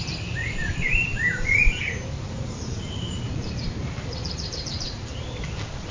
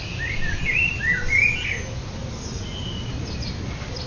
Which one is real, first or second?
second